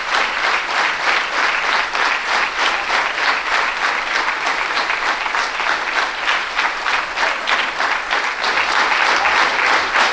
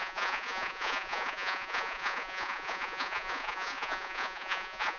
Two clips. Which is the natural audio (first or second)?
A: first